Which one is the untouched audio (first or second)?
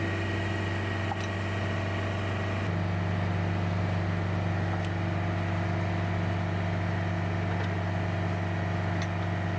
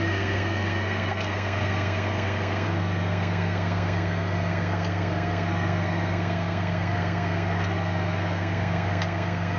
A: first